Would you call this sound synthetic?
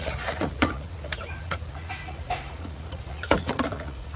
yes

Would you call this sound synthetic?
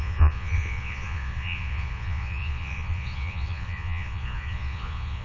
yes